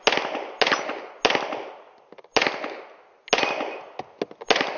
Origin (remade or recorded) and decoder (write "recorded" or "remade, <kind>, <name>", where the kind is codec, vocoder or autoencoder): recorded